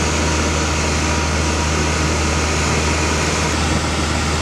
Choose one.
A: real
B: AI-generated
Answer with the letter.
A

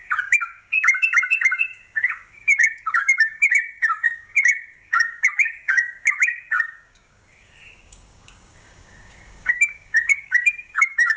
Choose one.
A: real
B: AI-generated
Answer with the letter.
B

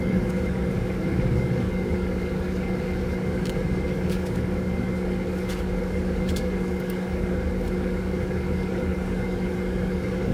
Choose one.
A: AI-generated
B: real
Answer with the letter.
A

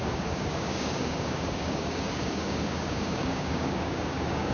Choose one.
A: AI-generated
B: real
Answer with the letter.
A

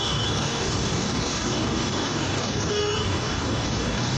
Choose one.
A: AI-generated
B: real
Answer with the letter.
A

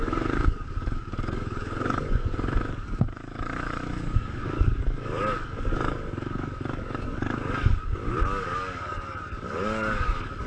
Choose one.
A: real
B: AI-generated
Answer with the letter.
B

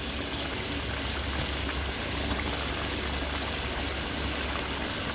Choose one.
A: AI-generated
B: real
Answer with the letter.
B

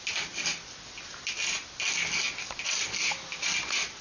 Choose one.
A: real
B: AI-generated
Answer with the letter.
A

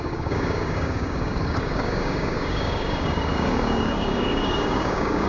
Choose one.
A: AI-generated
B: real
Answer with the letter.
A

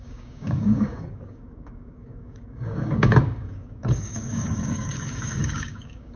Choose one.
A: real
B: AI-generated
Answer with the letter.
B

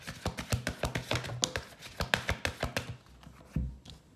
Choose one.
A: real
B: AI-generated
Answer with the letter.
A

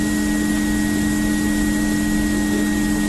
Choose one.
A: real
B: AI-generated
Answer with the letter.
A